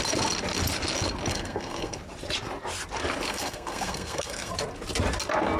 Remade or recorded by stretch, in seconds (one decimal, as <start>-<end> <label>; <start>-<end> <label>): 0.0-1.3 recorded; 1.3-2.0 remade; 2.0-3.3 recorded; 3.3-4.5 remade; 4.5-5.6 recorded

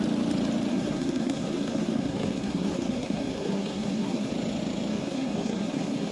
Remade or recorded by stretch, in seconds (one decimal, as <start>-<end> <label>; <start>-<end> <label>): 0.0-0.7 recorded; 0.7-4.3 remade; 4.3-4.9 recorded; 4.9-6.1 remade

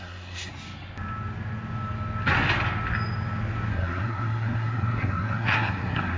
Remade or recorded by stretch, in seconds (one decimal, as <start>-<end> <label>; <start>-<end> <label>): 0.0-0.5 remade; 0.5-3.7 recorded; 3.7-6.2 remade

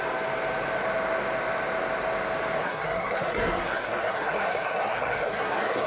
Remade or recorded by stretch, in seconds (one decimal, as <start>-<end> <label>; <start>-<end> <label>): 0.0-2.6 recorded; 2.6-5.9 remade

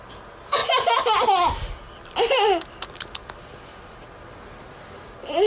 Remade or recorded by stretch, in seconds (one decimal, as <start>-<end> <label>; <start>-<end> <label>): 0.0-5.5 recorded

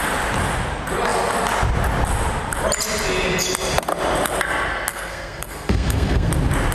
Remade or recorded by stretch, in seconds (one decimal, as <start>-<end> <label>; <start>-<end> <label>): 0.0-4.9 recorded; 4.9-6.3 remade; 6.3-6.7 recorded